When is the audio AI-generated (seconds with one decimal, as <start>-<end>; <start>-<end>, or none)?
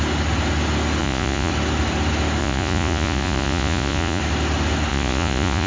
1.0-1.5; 2.4-4.2; 4.9-5.7